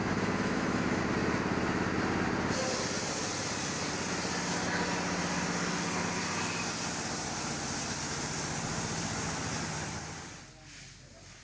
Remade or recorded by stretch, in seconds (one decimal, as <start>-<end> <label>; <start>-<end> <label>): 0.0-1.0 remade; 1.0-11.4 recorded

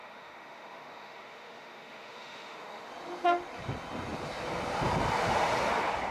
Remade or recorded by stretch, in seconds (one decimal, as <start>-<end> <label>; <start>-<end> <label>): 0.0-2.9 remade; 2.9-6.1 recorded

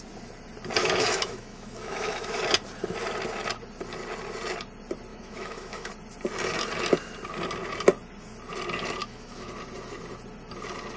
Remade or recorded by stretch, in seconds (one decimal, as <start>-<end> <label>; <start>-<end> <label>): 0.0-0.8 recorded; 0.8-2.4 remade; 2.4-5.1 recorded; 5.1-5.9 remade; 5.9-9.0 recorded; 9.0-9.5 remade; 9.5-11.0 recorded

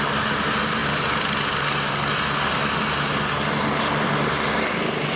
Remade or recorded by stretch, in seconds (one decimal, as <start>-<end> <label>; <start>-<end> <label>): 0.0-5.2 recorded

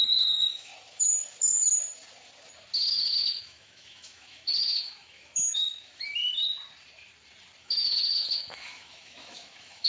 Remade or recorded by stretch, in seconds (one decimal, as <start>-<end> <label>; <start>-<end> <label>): 0.0-0.7 remade; 0.7-2.9 recorded; 2.9-6.2 remade; 6.2-7.6 recorded; 7.6-9.9 remade

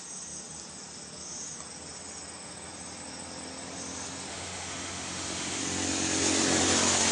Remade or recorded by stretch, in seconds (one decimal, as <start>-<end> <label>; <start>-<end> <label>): 0.0-4.3 recorded; 4.3-5.6 remade; 5.6-7.1 recorded